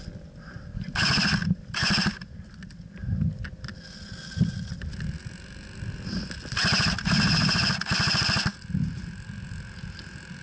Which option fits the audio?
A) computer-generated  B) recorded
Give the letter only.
B